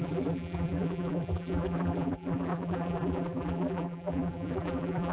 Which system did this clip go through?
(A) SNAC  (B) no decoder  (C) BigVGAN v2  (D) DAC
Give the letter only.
C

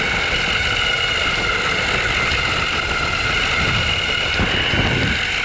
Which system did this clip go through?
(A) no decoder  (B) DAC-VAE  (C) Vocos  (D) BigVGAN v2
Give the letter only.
A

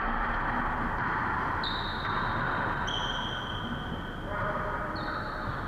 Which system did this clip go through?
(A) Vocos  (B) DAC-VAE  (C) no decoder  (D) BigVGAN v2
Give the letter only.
C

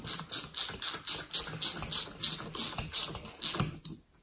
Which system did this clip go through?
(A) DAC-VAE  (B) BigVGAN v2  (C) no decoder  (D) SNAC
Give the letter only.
C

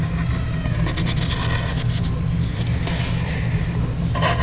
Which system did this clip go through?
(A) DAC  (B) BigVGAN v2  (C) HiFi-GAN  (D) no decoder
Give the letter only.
D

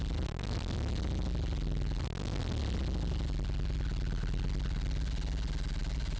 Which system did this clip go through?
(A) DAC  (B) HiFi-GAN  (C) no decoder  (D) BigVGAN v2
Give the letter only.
C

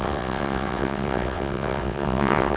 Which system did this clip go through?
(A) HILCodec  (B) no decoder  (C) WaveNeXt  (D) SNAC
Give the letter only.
C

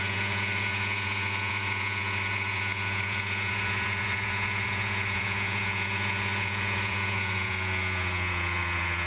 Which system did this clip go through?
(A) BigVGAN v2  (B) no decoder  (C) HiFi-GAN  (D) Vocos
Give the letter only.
D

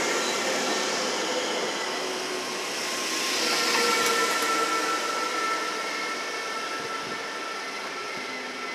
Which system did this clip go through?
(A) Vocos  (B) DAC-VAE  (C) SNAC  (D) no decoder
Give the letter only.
D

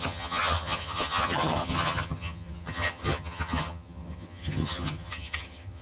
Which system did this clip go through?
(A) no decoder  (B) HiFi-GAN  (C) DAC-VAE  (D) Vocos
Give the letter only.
B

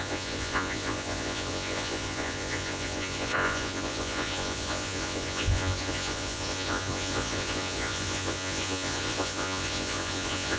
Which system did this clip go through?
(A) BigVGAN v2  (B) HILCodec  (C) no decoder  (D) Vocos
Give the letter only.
D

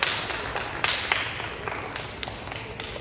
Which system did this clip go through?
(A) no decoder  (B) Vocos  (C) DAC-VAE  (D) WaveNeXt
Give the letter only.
A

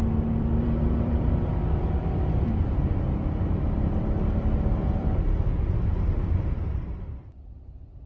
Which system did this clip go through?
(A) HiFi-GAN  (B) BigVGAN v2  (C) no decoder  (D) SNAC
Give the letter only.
B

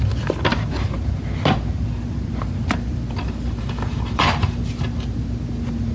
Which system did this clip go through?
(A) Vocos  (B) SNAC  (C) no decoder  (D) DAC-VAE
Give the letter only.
C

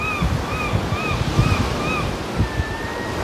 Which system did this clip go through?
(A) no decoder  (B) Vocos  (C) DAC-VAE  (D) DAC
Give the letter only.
A